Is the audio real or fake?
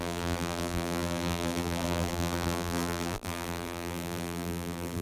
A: fake